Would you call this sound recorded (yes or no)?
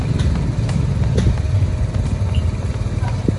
yes